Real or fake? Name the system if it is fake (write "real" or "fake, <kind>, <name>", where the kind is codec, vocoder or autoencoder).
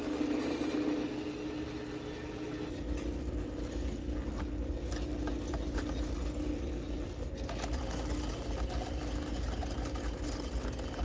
real